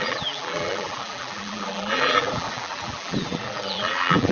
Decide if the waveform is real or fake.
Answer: fake